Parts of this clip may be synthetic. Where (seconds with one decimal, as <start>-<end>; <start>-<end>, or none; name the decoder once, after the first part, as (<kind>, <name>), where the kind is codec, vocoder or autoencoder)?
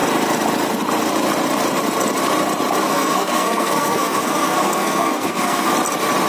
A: 2.8-5.7 (codec, SNAC)